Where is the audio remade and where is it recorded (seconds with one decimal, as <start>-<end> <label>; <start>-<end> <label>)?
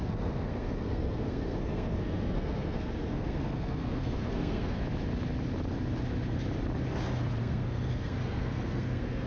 0.0-4.8 remade; 4.8-7.4 recorded; 7.4-9.3 remade